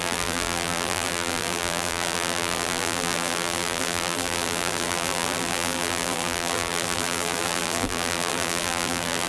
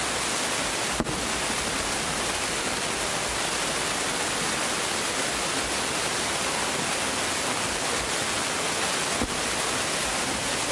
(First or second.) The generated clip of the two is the first